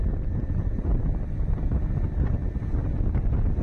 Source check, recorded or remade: recorded